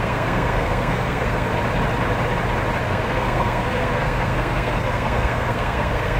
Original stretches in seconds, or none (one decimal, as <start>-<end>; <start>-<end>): 1.5-2.8